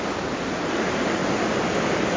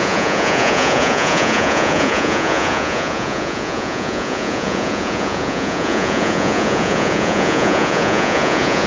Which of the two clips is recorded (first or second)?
first